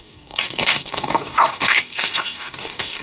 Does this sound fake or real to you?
fake